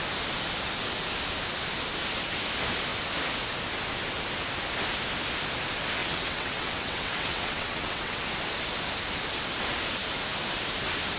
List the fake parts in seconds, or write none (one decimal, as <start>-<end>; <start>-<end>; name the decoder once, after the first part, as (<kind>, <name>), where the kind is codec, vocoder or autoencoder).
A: 6.0-8.2 (vocoder, WaveNeXt)